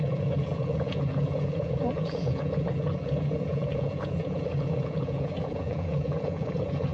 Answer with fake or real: fake